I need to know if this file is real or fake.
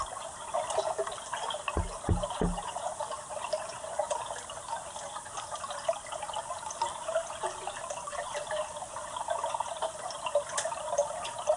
real